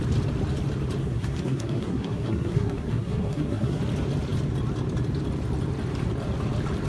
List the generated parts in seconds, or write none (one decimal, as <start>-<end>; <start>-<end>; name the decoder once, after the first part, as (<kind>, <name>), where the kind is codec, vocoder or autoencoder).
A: 1.0-3.8 (codec, SNAC)